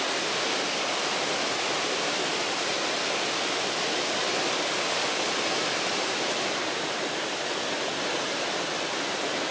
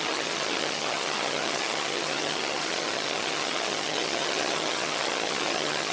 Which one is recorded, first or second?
first